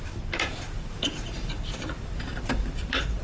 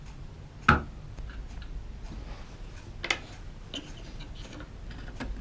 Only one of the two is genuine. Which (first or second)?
second